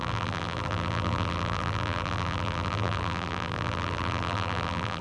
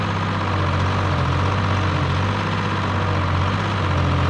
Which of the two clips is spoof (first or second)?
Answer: first